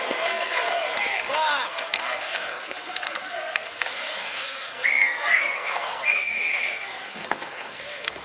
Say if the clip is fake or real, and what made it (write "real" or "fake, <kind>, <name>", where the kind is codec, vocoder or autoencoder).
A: fake, codec, SNAC